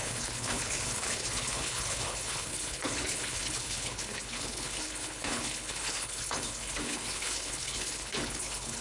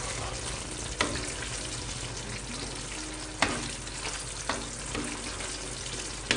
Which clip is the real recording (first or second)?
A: second